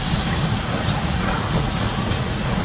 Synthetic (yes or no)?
yes